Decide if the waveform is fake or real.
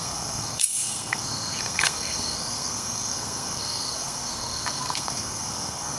fake